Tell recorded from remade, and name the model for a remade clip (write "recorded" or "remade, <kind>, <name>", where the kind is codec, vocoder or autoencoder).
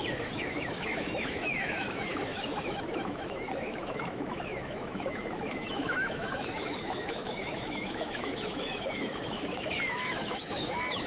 remade, autoencoder, DAC-VAE